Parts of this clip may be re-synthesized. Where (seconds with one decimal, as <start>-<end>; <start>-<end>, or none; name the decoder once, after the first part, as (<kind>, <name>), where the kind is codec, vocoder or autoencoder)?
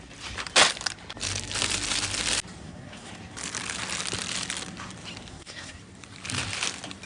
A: 2.6-3.1 (codec, SNAC); 5.3-5.8